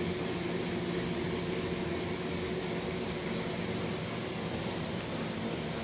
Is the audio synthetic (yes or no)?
no